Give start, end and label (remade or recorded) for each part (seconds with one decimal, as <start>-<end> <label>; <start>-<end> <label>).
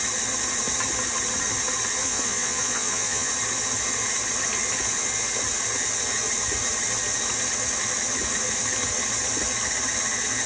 0.0-2.0 recorded; 2.0-3.3 remade; 3.3-10.5 recorded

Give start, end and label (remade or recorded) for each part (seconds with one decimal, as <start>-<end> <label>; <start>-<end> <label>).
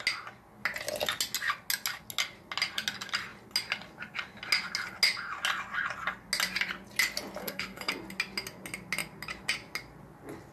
0.0-7.4 recorded; 7.4-7.9 remade; 7.9-10.5 recorded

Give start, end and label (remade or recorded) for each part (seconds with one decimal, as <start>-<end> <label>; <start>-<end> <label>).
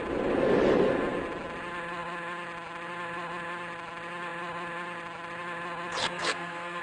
0.0-6.0 recorded; 6.0-6.8 remade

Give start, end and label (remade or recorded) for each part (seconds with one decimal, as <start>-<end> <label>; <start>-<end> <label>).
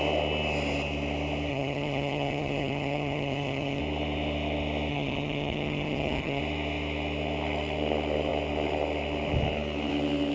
0.0-1.5 recorded; 1.5-3.8 remade; 3.8-4.9 recorded; 4.9-6.4 remade; 6.4-10.3 recorded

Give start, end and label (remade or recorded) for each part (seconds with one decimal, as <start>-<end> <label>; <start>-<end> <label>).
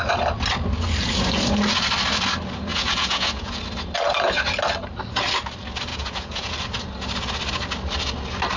0.0-2.7 recorded; 2.7-3.6 remade; 3.6-5.9 recorded; 5.9-6.5 remade; 6.5-8.6 recorded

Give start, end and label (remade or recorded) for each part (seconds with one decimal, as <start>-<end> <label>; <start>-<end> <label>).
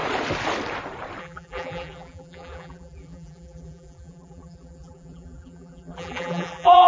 0.0-1.2 recorded; 1.2-6.9 remade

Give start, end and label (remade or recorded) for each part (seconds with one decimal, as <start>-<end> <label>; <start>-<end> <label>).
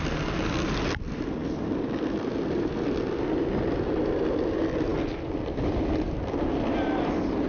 0.0-7.5 recorded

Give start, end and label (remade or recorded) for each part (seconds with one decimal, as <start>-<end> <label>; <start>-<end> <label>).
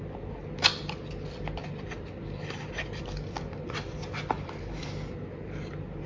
0.0-6.1 recorded